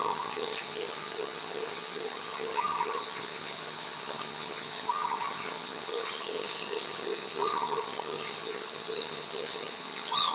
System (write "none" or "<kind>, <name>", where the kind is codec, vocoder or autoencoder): vocoder, HiFi-GAN